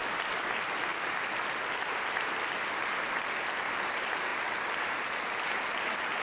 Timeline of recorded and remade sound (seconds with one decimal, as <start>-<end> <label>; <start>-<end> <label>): 0.0-6.2 recorded